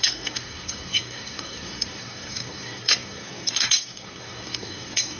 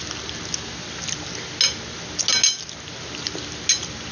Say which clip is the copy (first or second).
first